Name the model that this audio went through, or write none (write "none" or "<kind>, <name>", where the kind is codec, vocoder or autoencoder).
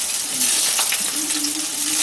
none